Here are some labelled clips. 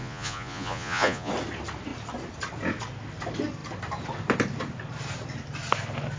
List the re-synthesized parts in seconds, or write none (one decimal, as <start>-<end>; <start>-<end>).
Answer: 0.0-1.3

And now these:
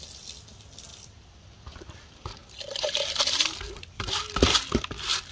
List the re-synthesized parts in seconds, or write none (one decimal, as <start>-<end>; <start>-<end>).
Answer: 0.9-1.8

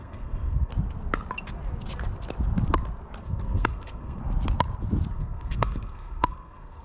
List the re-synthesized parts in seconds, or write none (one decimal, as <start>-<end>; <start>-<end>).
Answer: 0.0-0.7; 3.2-4.2; 5.1-6.8